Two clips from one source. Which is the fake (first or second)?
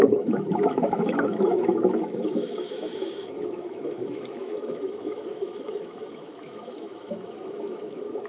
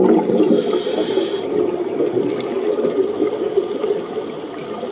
first